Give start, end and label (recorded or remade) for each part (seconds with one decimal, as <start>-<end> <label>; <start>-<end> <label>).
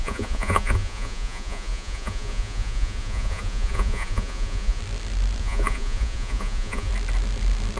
0.0-4.8 remade; 4.8-5.4 recorded; 5.4-6.9 remade; 6.9-7.8 recorded